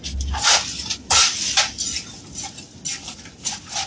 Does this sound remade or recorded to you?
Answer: recorded